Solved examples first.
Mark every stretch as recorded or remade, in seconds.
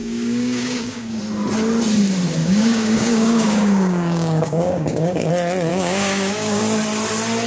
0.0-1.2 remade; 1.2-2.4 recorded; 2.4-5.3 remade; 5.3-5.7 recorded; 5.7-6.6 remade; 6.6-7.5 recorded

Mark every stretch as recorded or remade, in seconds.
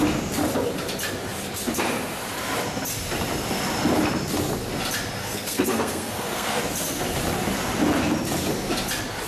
0.0-5.2 recorded; 5.2-6.6 remade; 6.6-9.3 recorded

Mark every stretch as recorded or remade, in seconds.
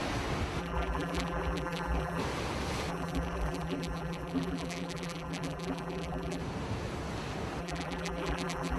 0.0-0.6 recorded; 0.6-2.2 remade; 2.2-2.9 recorded; 2.9-6.4 remade; 6.4-7.6 recorded; 7.6-8.8 remade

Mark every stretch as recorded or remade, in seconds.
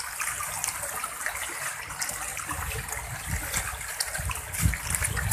0.0-2.3 recorded; 2.3-4.6 remade; 4.6-5.3 recorded